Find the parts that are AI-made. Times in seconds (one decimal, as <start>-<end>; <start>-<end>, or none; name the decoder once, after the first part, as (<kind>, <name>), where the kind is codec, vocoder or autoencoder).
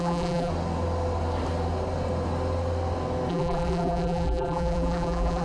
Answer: 0.0-0.5 (vocoder, BigVGAN v2); 3.3-5.4